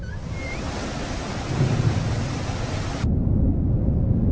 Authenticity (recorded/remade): recorded